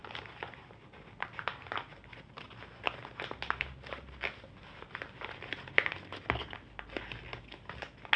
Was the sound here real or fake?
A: real